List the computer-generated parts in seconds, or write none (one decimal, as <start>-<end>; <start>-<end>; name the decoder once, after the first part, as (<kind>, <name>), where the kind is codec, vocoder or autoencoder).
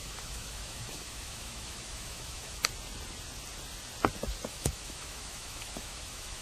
0.0-2.6 (autoencoder, DAC-VAE); 4.5-6.4